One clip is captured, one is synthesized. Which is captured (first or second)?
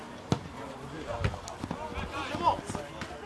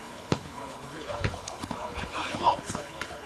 first